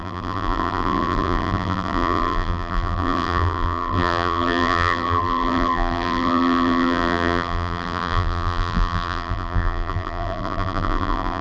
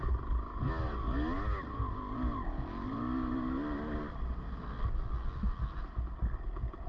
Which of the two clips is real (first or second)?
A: second